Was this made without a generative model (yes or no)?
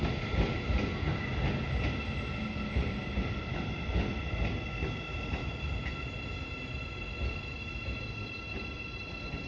yes